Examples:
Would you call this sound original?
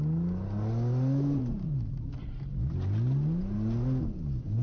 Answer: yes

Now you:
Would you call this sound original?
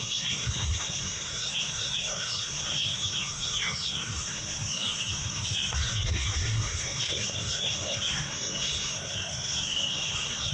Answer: no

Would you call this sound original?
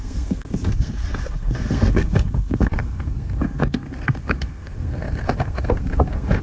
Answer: no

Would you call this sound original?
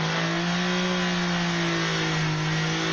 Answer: yes